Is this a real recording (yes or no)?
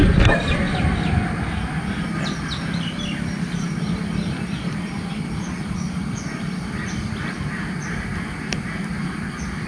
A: yes